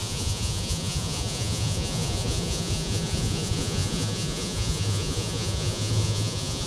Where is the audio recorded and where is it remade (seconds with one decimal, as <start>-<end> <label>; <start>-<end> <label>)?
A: 0.0-6.7 remade